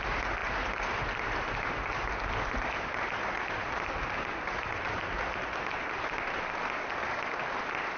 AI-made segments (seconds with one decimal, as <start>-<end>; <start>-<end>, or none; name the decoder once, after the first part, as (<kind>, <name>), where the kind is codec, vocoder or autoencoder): none